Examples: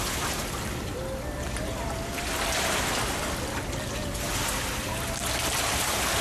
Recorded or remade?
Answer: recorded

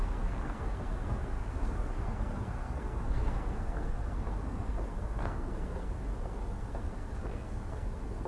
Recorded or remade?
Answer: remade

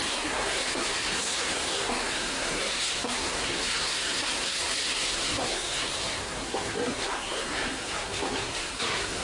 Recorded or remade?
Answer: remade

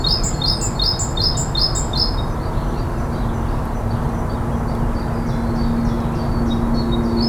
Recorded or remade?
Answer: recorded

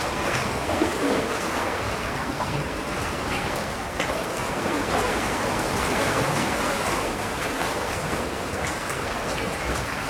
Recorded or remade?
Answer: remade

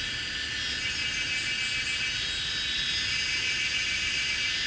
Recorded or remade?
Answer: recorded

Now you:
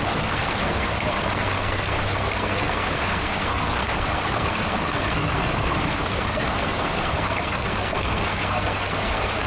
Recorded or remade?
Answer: remade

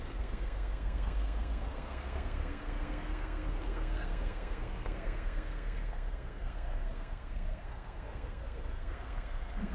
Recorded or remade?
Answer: remade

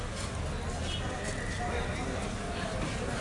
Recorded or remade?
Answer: recorded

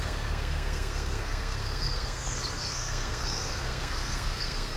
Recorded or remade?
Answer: remade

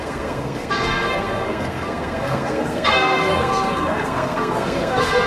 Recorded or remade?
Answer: remade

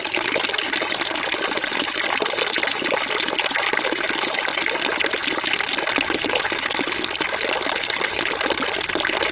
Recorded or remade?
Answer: recorded